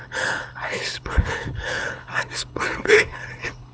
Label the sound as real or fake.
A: fake